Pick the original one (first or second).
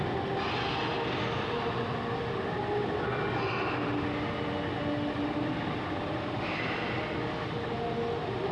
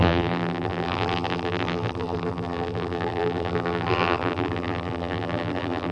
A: first